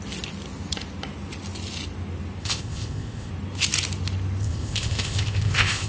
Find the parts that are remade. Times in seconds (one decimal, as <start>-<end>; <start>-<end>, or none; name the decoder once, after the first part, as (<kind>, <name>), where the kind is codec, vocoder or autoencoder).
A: 2.4-3.3 (codec, ZipCodec); 4.4-5.9